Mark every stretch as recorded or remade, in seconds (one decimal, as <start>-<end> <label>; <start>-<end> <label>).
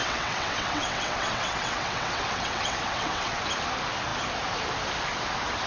0.0-3.4 remade; 3.4-5.7 recorded